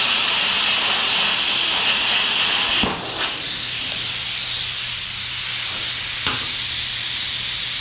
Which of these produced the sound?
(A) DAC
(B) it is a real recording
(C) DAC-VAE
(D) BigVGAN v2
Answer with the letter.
B